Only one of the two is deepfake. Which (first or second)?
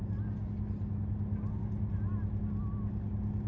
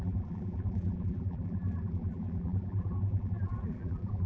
second